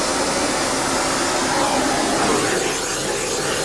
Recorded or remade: recorded